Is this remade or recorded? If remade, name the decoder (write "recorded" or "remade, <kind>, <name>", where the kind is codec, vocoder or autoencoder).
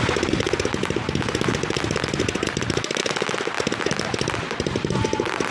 remade, vocoder, BigVGAN v2